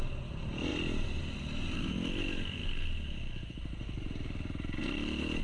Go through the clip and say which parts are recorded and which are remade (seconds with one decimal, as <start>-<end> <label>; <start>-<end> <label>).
0.0-5.4 recorded